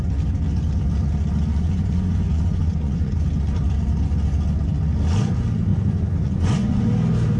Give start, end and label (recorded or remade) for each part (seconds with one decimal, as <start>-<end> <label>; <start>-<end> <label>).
0.0-1.5 recorded; 1.5-3.2 remade; 3.2-5.7 recorded; 5.7-6.8 remade; 6.8-7.4 recorded